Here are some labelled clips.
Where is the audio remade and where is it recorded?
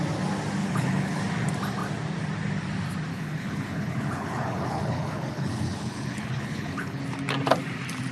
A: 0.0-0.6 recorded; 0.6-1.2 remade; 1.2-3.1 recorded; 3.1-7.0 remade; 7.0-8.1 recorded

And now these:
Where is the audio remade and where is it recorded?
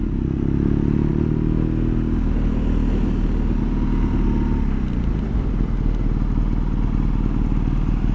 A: 0.0-8.1 recorded